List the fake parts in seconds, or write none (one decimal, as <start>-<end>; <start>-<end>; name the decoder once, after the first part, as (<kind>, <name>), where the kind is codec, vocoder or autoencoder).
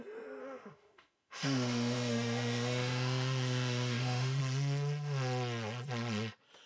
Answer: 0.4-4.4 (autoencoder, DAC-VAE)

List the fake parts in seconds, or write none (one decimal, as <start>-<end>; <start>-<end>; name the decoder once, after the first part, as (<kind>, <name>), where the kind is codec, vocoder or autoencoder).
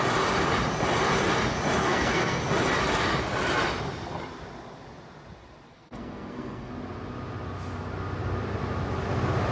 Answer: 1.8-2.4 (codec, SNAC); 5.7-6.7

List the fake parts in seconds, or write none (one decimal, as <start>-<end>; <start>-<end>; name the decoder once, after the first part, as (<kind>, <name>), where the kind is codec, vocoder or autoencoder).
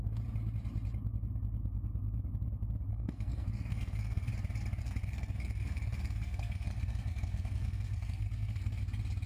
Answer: 2.9-4.3 (codec, SNAC); 4.8-8.8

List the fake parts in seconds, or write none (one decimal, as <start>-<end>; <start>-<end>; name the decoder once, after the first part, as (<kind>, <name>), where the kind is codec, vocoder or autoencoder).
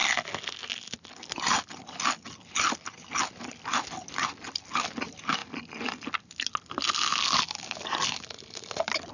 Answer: none